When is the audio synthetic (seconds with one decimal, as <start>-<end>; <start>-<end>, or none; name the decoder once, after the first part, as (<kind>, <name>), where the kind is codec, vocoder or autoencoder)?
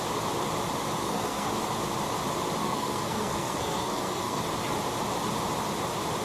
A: 1.0-1.5 (codec, SNAC); 2.6-4.4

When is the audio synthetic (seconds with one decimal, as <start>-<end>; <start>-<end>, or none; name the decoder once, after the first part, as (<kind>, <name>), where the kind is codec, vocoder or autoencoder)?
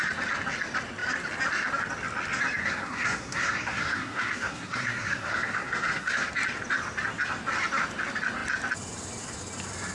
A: 2.6-6.3 (codec, SNAC)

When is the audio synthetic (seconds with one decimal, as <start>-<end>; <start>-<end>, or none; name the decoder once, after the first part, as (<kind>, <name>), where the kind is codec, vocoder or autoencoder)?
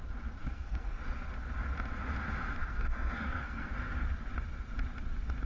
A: 0.4-1.0 (codec, SNAC); 2.6-3.7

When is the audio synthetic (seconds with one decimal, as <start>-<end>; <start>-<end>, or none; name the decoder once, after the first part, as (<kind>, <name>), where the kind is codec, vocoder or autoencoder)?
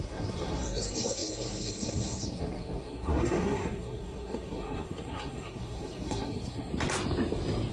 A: 0.0-6.7 (codec, SNAC)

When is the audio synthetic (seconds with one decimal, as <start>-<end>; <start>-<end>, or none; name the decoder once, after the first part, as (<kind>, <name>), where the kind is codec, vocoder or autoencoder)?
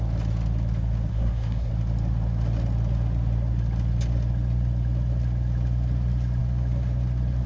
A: 1.1-1.7 (codec, SNAC)